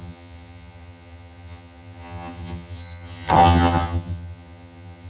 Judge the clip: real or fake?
fake